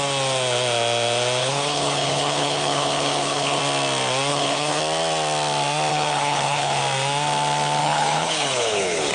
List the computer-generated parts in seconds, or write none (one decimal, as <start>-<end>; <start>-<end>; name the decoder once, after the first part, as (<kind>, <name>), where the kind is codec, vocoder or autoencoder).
1.4-3.6 (codec, HILCodec); 4.3-4.8; 5.9-6.8; 7.8-9.1